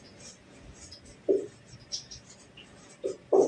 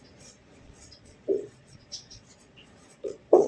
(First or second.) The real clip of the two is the first